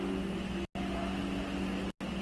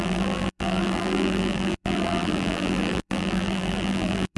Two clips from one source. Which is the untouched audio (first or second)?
first